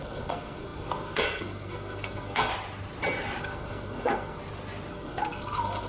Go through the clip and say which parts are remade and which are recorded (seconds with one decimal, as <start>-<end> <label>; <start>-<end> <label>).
0.0-2.5 remade; 2.5-3.4 recorded; 3.4-4.4 remade; 4.4-4.9 recorded; 4.9-5.9 remade